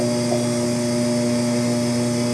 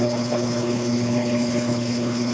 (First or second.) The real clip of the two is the first